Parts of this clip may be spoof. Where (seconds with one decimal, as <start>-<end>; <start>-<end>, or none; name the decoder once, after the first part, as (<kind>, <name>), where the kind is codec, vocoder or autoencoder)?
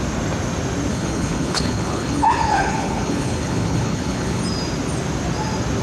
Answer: 0.9-4.4 (codec, HILCodec)